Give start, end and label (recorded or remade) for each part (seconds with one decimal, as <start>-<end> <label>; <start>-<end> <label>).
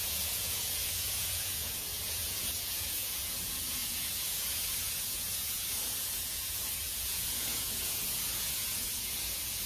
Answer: 0.0-9.7 remade